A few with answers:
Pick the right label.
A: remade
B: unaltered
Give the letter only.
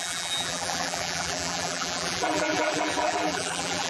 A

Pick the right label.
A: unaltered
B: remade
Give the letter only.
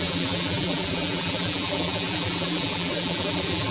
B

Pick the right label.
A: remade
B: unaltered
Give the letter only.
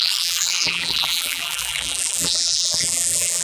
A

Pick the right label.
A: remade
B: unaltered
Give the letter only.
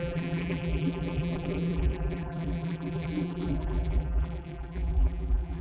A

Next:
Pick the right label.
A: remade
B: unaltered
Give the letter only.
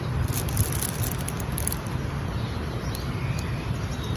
A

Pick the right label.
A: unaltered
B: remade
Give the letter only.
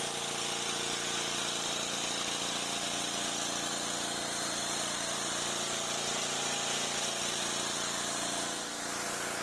A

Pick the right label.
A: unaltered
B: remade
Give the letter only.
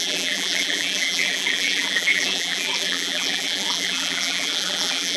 B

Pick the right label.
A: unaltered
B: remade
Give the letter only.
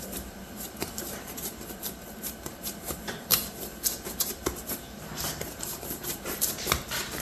B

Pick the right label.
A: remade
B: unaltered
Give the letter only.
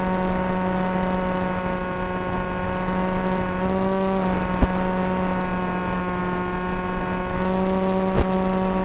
B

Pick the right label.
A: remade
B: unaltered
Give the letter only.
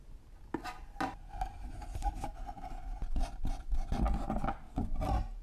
B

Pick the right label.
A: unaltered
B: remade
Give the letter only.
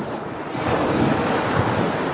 B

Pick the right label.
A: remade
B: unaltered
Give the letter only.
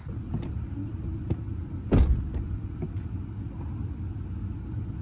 B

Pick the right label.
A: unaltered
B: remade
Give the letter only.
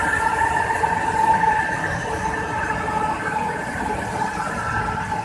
A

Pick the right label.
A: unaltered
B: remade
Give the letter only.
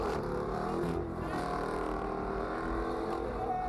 B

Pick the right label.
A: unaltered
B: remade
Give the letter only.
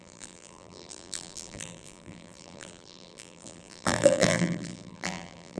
B